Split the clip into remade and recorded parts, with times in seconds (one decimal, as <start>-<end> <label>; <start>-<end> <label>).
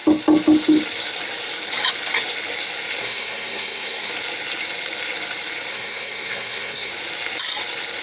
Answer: 0.0-3.0 recorded; 3.0-4.1 remade; 4.1-5.7 recorded; 5.7-6.9 remade; 6.9-8.0 recorded